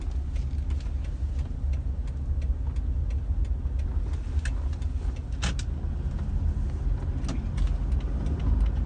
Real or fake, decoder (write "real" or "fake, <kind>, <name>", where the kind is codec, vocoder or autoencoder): real